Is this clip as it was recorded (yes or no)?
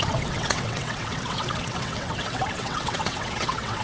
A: no